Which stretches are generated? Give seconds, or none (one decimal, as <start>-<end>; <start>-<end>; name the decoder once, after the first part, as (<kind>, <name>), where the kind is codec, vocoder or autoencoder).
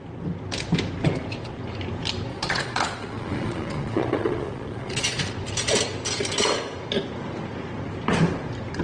2.3-5.3 (vocoder, Vocos)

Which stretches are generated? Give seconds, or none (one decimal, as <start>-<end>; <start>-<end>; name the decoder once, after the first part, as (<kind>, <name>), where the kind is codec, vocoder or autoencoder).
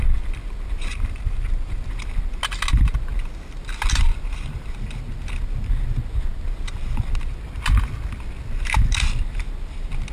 0.9-1.9 (vocoder, BigVGAN v2)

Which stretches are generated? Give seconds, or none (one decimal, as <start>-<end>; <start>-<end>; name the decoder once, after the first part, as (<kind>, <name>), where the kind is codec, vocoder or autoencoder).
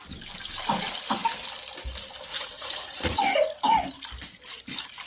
2.3-3.2 (vocoder, Vocos)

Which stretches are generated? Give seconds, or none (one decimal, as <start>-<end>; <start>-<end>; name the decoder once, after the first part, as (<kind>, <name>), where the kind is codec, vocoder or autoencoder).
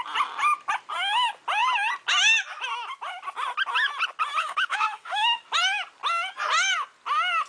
4.4-5.4 (autoencoder, DAC-VAE)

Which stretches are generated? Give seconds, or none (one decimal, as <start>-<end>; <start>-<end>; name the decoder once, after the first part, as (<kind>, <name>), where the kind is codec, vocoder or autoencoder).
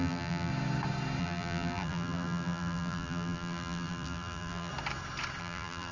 0.0-0.5 (vocoder, BigVGAN v2); 1.2-4.7; 5.4-5.9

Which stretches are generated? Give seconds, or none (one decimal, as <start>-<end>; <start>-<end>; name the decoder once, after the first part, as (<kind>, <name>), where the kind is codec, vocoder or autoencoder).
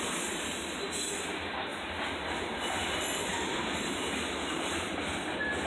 3.3-4.9 (vocoder, BigVGAN v2)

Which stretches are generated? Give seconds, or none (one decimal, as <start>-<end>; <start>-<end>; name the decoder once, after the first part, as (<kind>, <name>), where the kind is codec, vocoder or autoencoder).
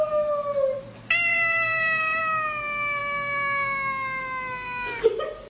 1.3-2.2 (vocoder, BigVGAN v2)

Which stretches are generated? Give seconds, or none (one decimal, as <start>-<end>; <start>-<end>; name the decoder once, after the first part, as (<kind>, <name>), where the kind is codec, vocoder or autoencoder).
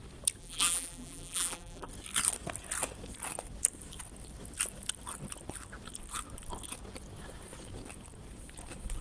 0.4-1.9 (vocoder, BigVGAN v2)